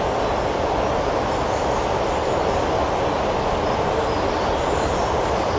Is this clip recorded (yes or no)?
yes